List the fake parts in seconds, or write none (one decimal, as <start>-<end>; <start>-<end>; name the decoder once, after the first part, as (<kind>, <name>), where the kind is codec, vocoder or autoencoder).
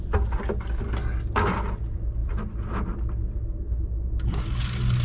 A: none